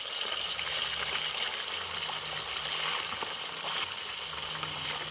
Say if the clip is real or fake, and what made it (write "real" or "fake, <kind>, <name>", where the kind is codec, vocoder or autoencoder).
real